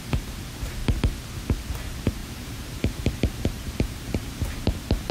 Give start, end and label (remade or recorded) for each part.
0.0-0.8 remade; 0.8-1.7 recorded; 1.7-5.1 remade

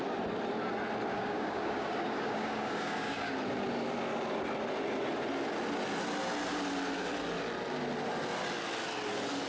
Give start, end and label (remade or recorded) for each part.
0.0-1.1 recorded; 1.1-3.3 remade; 3.3-9.5 recorded

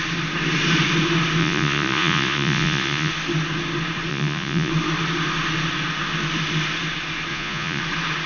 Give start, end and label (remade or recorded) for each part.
0.0-1.4 recorded; 1.4-3.1 remade; 3.1-4.1 recorded; 4.1-4.7 remade; 4.7-7.3 recorded; 7.3-7.8 remade; 7.8-8.3 recorded

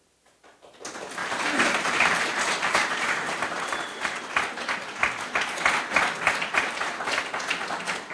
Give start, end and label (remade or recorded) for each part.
0.0-1.2 recorded; 1.2-3.7 remade; 3.7-8.1 recorded

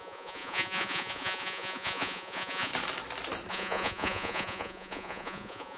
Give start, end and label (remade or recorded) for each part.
0.0-2.7 remade; 2.7-3.5 recorded; 3.5-5.8 remade